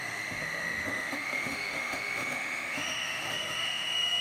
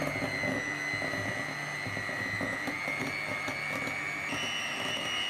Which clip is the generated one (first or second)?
first